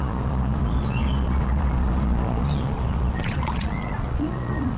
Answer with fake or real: fake